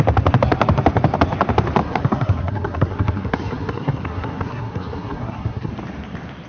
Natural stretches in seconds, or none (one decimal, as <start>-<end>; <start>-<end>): 0.0-1.8; 5.7-6.5